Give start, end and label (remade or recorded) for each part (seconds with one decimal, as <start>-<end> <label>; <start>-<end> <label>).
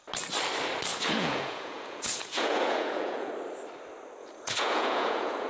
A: 0.0-0.9 recorded; 0.9-3.3 remade; 3.3-4.2 recorded; 4.2-5.5 remade